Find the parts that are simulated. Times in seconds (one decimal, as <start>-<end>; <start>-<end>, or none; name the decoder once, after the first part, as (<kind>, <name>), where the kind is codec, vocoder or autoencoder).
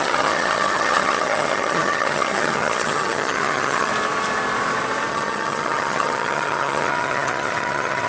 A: 0.0-3.9 (vocoder, HiFi-GAN); 5.1-8.1